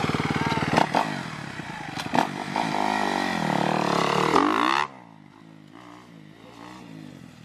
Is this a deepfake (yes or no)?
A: no